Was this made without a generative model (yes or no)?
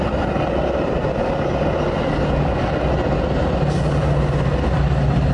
yes